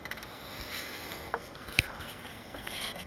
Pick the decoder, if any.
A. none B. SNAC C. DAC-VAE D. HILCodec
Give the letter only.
B